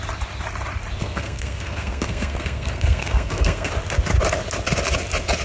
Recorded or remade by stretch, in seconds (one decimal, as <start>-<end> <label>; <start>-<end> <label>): 0.0-1.0 recorded; 1.0-3.7 remade; 3.7-5.4 recorded